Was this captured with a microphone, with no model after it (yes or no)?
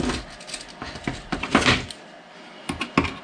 yes